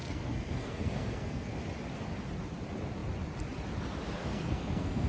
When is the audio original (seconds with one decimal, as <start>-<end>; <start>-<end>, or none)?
1.5-4.2